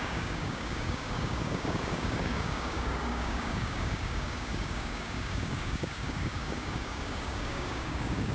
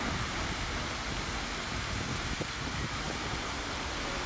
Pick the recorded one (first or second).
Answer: second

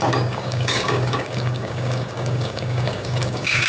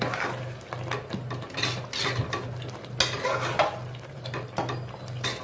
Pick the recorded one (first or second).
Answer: second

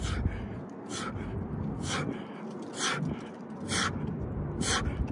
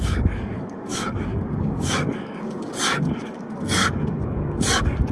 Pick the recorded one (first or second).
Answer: first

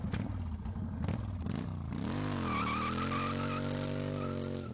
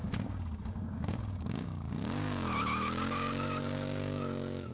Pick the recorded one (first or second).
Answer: first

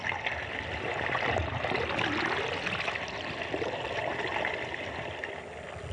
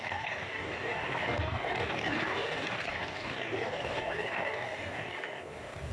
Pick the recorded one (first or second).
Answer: first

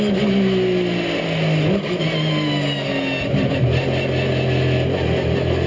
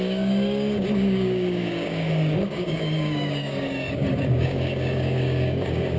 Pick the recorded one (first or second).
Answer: first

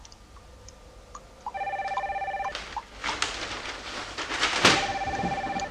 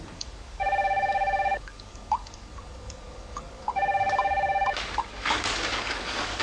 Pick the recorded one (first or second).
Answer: first